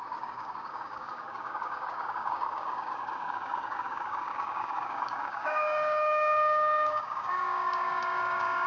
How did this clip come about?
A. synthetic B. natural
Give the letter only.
A